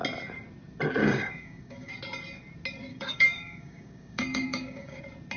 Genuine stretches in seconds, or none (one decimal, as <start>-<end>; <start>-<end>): 0.0-1.0; 1.9-2.9; 5.0-5.4